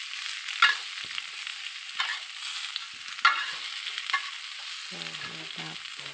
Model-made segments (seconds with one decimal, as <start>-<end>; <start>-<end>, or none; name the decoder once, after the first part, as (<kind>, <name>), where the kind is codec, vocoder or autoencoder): 1.5-2.0 (vocoder, BigVGAN v2)